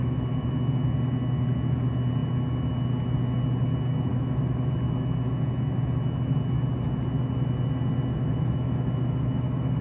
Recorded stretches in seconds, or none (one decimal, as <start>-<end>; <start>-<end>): 0.5-4.1; 4.7-8.2